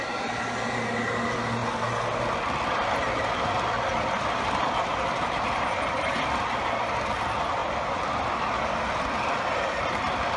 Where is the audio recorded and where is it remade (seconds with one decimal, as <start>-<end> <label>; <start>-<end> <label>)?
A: 0.0-10.4 recorded